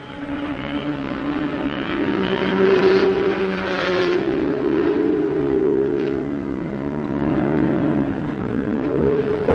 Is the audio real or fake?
fake